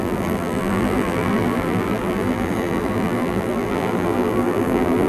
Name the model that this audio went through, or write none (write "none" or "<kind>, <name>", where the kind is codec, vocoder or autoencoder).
vocoder, BigVGAN v2